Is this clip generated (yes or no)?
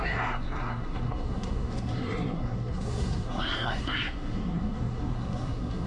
yes